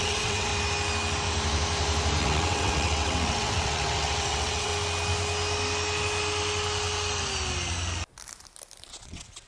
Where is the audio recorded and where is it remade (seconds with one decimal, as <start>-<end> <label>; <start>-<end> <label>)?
0.0-0.5 remade; 0.5-2.2 recorded; 2.2-4.7 remade; 4.7-8.9 recorded; 8.9-9.5 remade